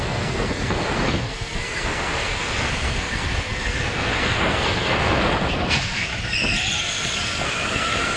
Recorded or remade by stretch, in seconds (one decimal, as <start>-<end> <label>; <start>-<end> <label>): 0.0-6.1 remade; 6.1-6.8 recorded; 6.8-8.2 remade